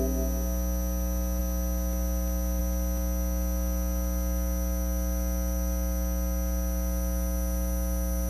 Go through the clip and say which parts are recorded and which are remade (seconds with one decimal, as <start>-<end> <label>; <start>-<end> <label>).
0.0-8.3 recorded